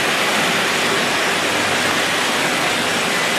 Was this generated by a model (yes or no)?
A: no